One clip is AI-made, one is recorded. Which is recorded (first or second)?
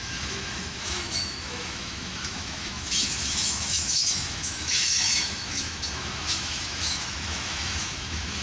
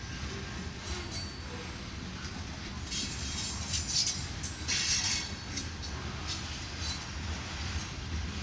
second